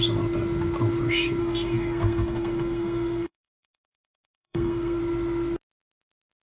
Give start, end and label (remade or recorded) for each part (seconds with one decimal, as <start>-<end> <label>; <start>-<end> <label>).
0.0-1.4 recorded; 1.4-5.0 remade; 5.0-6.5 recorded